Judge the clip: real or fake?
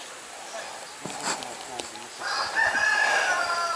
real